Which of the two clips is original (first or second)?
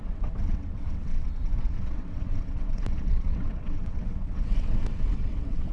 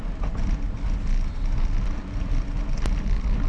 second